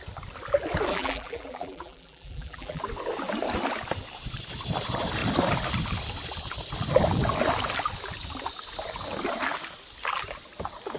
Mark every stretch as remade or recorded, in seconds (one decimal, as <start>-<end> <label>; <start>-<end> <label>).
0.0-0.9 recorded; 0.9-2.8 remade; 2.8-11.0 recorded